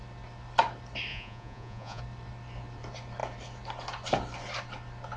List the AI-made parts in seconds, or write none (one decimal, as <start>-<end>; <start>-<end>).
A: 1.1-2.0